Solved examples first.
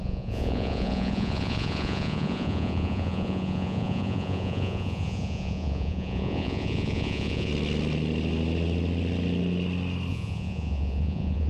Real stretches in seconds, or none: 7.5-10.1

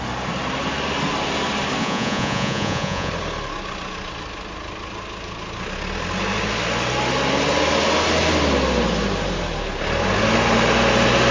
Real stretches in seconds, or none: 0.0-1.8; 3.1-11.3

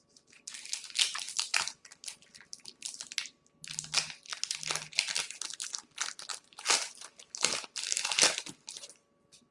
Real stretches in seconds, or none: 0.0-9.5

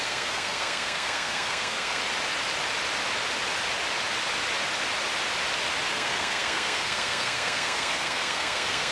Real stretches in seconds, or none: 2.0-5.9

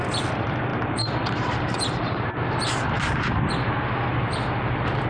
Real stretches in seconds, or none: 0.0-0.7; 2.3-5.1